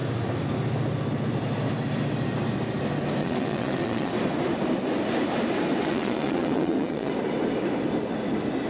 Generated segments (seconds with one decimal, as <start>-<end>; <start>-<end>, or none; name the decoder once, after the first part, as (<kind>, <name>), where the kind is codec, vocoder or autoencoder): 3.2-4.1 (vocoder, WaveNeXt); 5.8-7.1